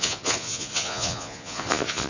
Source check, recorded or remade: remade